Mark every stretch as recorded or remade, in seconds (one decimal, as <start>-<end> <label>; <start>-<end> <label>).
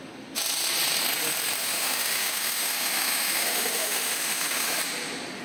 0.0-1.6 recorded; 1.6-4.8 remade; 4.8-5.4 recorded